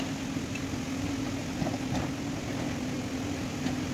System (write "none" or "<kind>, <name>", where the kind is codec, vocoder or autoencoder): none